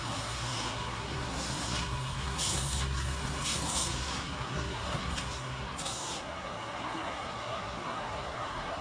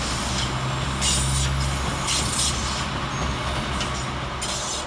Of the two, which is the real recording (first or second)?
second